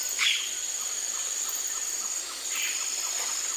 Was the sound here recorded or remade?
recorded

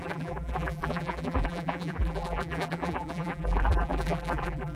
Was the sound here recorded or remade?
remade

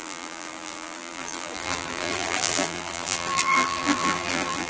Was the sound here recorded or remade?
remade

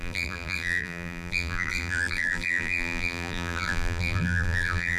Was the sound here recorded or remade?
remade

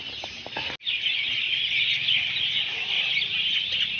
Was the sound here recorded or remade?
recorded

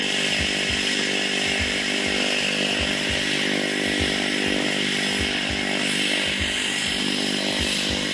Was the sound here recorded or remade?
recorded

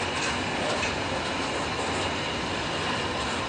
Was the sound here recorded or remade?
recorded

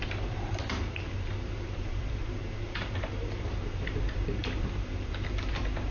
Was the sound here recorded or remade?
remade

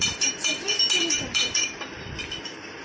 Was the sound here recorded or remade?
remade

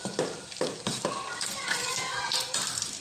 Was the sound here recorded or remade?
remade